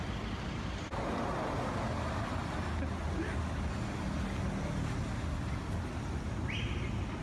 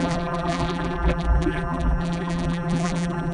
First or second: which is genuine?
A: first